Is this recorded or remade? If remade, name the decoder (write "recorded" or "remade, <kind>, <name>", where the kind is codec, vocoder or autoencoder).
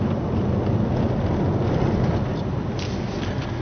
recorded